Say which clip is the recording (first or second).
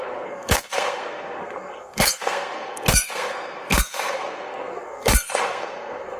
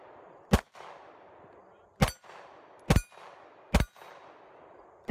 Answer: second